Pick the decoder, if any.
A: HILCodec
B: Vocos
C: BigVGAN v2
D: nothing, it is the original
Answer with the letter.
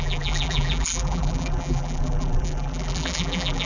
C